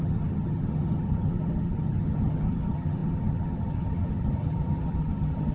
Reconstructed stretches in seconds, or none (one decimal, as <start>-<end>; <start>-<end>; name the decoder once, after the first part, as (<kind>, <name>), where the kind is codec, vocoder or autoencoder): 0.0-5.5 (vocoder, HiFi-GAN)